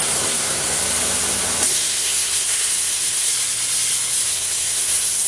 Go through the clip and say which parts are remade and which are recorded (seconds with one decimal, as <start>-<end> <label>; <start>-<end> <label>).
0.0-0.8 remade; 0.8-1.7 recorded; 1.7-3.3 remade; 3.3-4.3 recorded; 4.3-5.3 remade